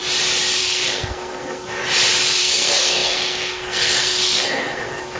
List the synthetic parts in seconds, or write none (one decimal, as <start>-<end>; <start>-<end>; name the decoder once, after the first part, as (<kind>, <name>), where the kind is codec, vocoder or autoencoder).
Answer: 0.6-1.8 (codec, SNAC); 2.4-5.2